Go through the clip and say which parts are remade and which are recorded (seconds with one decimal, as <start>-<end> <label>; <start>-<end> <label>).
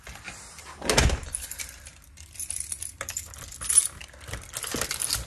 0.0-5.3 recorded